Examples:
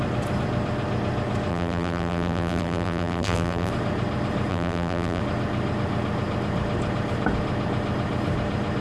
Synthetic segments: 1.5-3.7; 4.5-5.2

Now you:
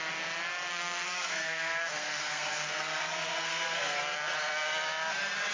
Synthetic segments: 0.7-4.0

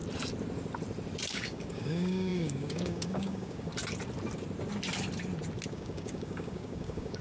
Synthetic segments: 1.3-3.7; 5.7-7.2

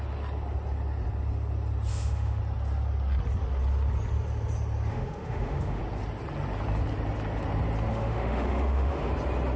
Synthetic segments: 1.9-2.4; 4.9-5.8; 7.9-9.1

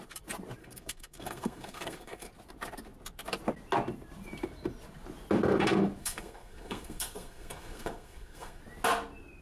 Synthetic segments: 0.6-2.3; 6.0-8.6

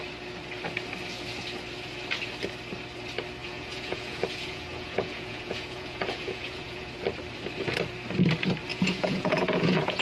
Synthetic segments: 3.4-6.9; 8.7-10.0